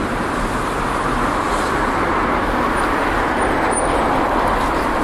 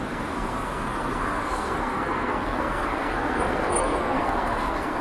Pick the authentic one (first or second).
first